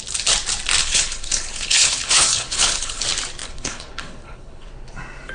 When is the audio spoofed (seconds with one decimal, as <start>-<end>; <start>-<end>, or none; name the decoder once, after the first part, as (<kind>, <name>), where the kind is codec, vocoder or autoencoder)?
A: 0.8-3.0 (codec, HILCodec); 3.4-4.7